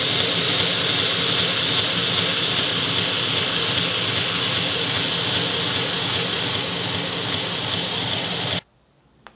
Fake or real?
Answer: real